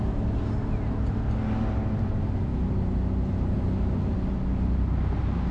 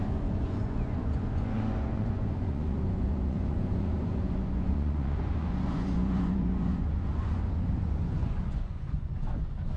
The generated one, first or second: second